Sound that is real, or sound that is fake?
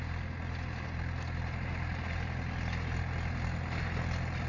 real